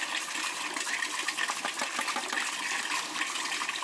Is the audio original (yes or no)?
yes